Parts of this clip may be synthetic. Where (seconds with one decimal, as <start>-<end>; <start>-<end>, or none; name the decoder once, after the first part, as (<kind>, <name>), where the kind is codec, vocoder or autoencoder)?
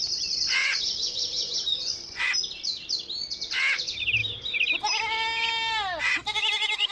0.6-2.2 (vocoder, Vocos)